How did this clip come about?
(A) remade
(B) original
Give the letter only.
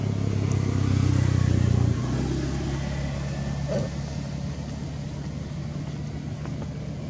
B